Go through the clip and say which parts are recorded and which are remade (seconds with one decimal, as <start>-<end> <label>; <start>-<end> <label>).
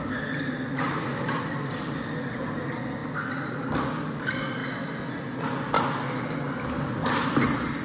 0.0-3.0 recorded; 3.0-3.8 remade; 3.8-7.8 recorded